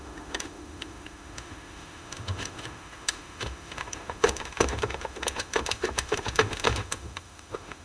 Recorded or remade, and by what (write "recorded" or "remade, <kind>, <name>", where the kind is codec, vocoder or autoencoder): remade, autoencoder, DAC-VAE